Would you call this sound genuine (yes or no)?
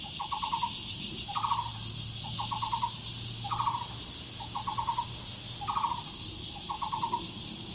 yes